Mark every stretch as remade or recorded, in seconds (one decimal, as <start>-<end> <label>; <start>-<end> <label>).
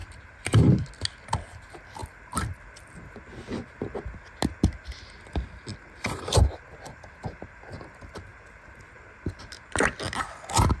0.0-0.8 remade; 0.8-10.8 recorded